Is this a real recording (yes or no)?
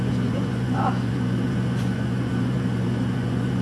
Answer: no